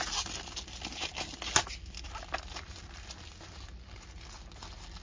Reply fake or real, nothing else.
real